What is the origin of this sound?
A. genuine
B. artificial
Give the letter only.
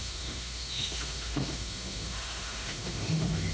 B